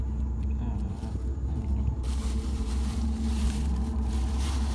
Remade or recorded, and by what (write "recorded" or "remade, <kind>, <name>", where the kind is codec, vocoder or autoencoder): remade, vocoder, BigVGAN v2